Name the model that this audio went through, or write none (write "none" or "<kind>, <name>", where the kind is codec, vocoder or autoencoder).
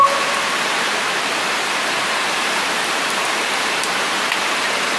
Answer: vocoder, BigVGAN v2